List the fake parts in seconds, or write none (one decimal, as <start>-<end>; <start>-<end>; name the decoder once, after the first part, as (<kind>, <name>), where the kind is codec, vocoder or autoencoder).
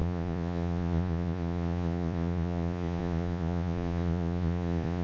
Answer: 0.0-5.0 (vocoder, Vocos)